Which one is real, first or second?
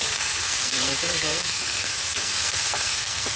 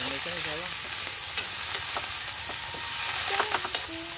second